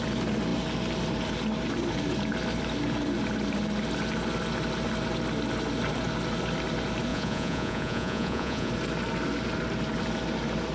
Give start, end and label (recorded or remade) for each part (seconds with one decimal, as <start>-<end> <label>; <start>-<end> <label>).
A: 0.0-7.1 recorded; 7.1-8.7 remade; 8.7-10.7 recorded